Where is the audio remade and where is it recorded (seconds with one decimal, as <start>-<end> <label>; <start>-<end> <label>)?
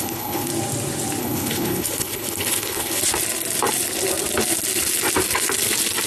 0.0-0.5 remade; 0.5-1.2 recorded; 1.2-3.0 remade; 3.0-6.1 recorded